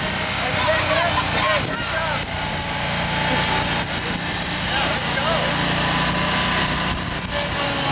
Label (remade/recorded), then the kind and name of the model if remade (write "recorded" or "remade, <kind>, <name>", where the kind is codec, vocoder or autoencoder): recorded